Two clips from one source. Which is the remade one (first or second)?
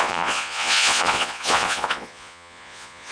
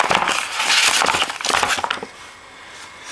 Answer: first